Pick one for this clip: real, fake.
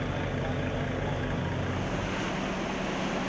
real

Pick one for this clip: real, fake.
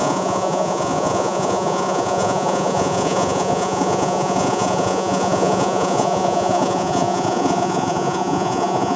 fake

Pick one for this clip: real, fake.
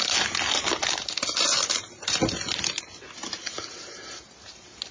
real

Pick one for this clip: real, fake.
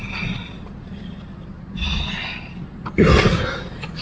real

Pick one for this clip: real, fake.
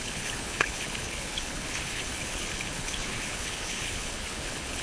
fake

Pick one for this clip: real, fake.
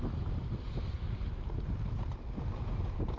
real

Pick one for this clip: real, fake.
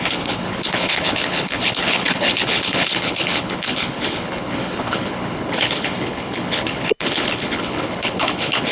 fake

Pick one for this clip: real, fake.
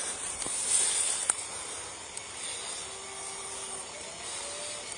real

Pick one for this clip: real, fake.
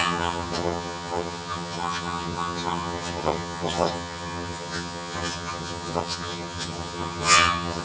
fake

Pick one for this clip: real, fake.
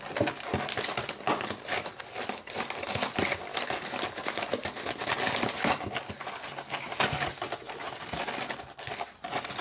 real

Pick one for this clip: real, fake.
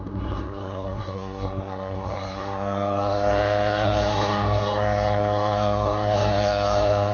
fake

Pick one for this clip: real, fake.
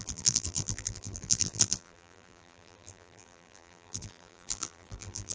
fake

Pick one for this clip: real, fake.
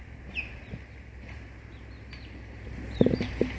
fake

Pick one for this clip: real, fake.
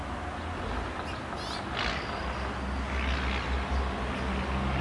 real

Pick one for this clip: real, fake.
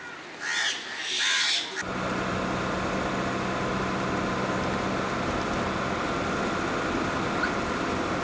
real